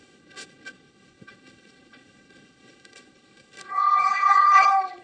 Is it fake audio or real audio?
fake